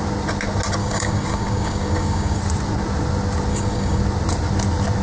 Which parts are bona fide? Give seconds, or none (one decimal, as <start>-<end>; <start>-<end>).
0.0-0.8; 2.4-3.5; 4.0-5.0